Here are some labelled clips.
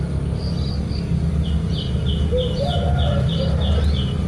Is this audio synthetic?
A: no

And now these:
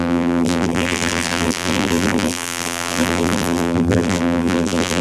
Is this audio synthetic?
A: yes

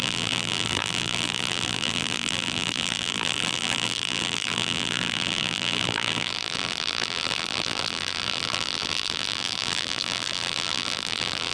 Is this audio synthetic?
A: yes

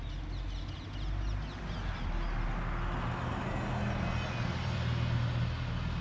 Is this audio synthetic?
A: no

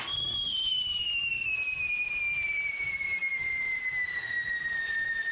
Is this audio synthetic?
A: yes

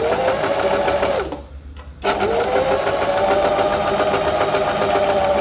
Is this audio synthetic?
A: no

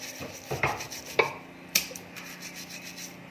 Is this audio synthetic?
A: yes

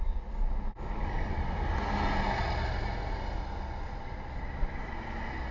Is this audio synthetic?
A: no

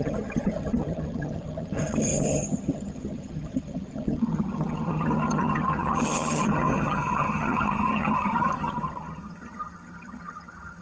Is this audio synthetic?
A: yes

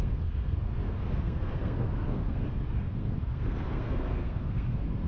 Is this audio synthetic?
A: yes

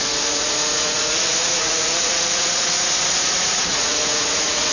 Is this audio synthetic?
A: yes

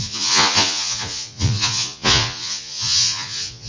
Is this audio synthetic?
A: yes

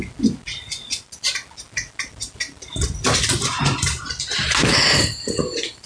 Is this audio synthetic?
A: no